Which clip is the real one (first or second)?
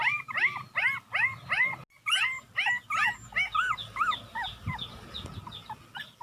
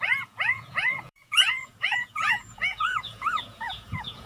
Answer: first